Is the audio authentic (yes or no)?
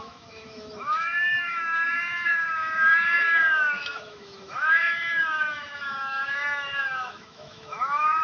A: no